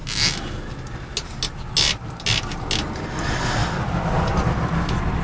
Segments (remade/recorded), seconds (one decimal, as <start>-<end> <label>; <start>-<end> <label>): 0.0-5.2 recorded